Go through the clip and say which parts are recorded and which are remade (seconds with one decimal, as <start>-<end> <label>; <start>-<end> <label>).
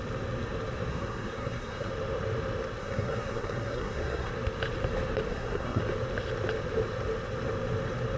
0.0-0.9 recorded; 0.9-1.9 remade; 1.9-2.8 recorded; 2.8-4.3 remade; 4.3-5.3 recorded; 5.3-5.8 remade; 5.8-8.2 recorded